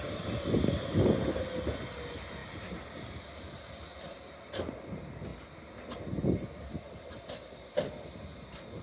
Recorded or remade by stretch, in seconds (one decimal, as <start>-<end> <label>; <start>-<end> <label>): 0.0-8.8 recorded